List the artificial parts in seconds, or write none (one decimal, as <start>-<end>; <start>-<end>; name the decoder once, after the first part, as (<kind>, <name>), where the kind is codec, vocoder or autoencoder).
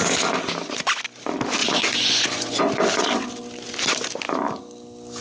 1.6-2.6 (vocoder, Vocos)